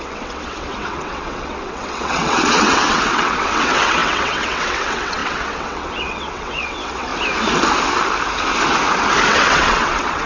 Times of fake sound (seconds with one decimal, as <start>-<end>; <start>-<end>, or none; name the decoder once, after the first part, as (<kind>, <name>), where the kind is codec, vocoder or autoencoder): 0.0-7.1 (vocoder, WaveNeXt); 9.3-10.3